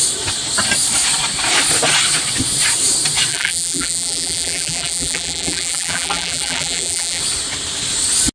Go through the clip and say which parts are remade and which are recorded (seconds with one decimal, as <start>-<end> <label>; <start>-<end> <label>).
0.0-3.3 recorded; 3.3-7.2 remade; 7.2-8.3 recorded